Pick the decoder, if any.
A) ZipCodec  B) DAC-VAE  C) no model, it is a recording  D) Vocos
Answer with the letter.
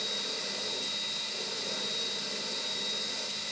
C